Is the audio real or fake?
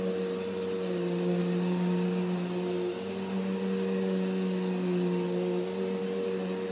real